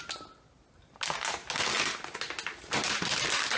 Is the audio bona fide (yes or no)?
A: yes